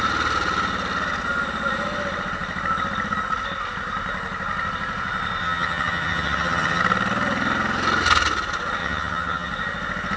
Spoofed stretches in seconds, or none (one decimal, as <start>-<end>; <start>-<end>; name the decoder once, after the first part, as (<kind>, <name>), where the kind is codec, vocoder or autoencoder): 5.4-6.8 (vocoder, HiFi-GAN); 8.8-9.5